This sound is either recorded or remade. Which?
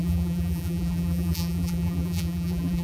remade